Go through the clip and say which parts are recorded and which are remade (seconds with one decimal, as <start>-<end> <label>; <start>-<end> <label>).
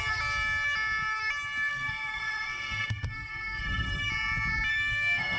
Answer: 0.0-1.7 recorded; 1.7-4.1 remade; 4.1-4.7 recorded; 4.7-5.4 remade